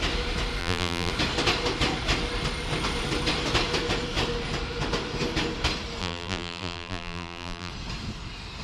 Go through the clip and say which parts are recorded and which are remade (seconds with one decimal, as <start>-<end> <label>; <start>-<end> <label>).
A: 0.0-0.6 recorded; 0.6-1.1 remade; 1.1-6.0 recorded; 6.0-7.7 remade; 7.7-8.6 recorded